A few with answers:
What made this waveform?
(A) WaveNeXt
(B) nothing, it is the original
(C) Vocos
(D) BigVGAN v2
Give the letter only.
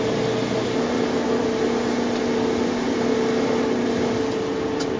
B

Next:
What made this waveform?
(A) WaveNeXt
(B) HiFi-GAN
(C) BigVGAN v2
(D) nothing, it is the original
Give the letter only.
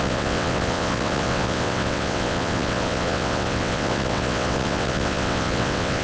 A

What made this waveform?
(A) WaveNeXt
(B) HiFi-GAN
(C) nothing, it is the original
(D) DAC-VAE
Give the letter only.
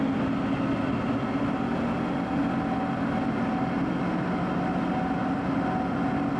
C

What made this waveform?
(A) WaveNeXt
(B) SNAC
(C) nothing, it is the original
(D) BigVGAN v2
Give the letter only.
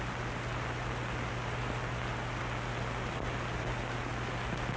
C